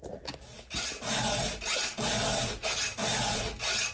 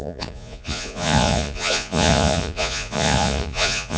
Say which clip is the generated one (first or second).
second